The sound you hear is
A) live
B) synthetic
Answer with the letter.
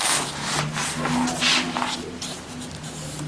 A